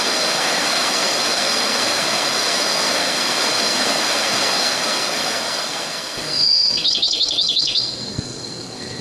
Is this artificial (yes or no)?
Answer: yes